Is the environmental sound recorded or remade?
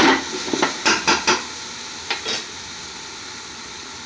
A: recorded